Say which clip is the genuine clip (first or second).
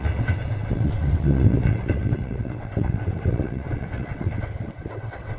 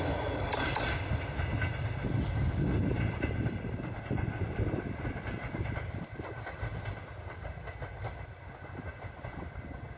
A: second